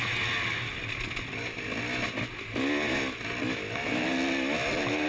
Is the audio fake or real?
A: real